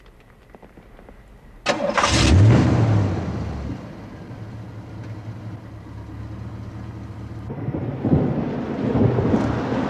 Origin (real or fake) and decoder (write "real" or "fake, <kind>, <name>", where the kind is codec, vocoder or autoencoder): real